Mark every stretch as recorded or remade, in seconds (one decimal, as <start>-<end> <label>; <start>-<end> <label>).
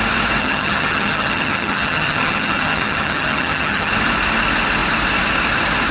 0.0-0.4 recorded; 0.4-3.9 remade; 3.9-5.9 recorded